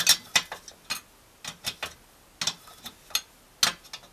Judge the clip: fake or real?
real